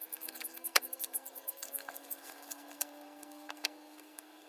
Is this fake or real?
fake